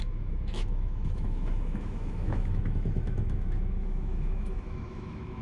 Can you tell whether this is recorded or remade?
remade